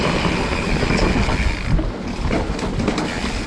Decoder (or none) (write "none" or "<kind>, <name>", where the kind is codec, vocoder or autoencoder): none